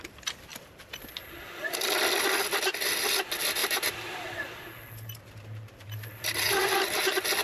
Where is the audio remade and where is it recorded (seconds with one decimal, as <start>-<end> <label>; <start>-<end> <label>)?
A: 0.0-3.6 recorded; 3.6-4.6 remade; 4.6-7.4 recorded